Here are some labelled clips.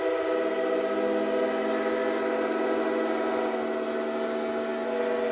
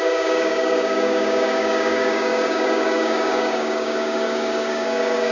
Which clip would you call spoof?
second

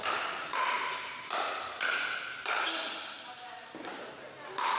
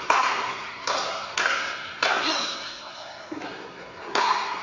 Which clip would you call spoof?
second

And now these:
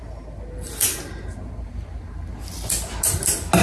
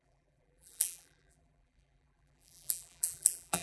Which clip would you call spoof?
second